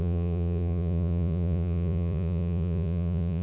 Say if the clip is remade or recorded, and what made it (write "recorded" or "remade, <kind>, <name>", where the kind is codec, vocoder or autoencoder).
remade, vocoder, Vocos